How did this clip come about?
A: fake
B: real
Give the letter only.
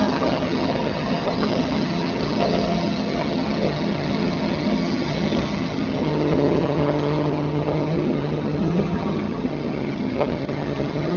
A